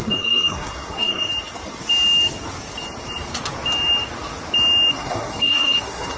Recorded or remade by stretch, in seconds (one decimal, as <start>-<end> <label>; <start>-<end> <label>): 0.0-1.3 remade; 1.3-4.9 recorded; 4.9-6.2 remade